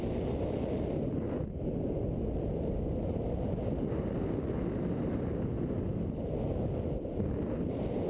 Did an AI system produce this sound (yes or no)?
no